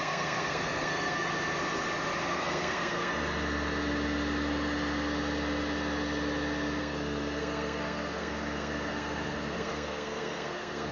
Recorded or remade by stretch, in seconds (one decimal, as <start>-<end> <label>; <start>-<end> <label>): 0.0-1.3 remade; 1.3-2.2 recorded; 2.2-3.1 remade; 3.1-6.8 recorded; 6.8-10.9 remade